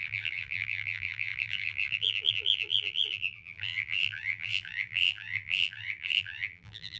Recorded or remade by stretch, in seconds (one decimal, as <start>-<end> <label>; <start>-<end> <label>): 0.0-7.0 remade